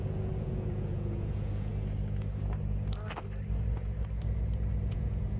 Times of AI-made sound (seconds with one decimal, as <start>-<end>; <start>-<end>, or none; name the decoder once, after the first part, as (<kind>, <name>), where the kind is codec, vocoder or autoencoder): 0.0-1.7 (vocoder, Vocos); 4.9-5.4